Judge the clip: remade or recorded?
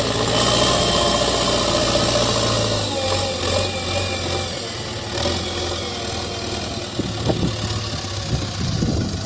recorded